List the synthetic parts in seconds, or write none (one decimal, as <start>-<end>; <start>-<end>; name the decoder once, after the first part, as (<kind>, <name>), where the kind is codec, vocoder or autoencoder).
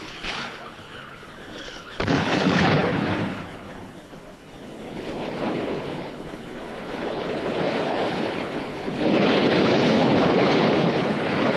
0.0-11.6 (codec, HILCodec)